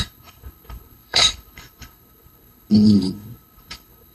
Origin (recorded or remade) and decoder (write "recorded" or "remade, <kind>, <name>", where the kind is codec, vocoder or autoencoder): remade, codec, HILCodec